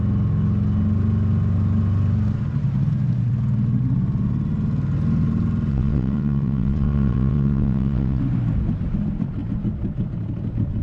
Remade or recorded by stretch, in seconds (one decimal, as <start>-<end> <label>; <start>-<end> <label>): 0.0-5.7 recorded; 5.7-8.2 remade; 8.2-10.8 recorded